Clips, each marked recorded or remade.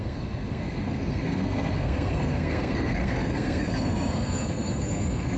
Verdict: remade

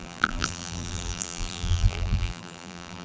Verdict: remade